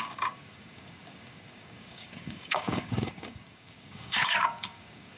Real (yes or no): no